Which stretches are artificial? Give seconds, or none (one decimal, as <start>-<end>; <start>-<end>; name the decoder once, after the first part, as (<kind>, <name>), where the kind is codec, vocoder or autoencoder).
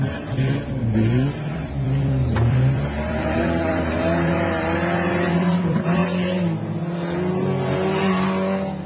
0.0-6.0 (vocoder, BigVGAN v2)